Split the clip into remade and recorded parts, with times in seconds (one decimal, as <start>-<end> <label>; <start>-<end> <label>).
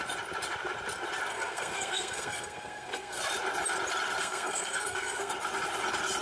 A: 0.0-1.3 recorded; 1.3-3.2 remade; 3.2-4.2 recorded; 4.2-5.3 remade; 5.3-6.2 recorded